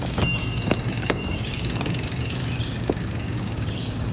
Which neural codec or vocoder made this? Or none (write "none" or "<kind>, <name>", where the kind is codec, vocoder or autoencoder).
codec, DAC